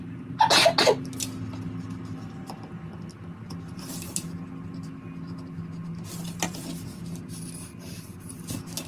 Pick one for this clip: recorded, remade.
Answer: recorded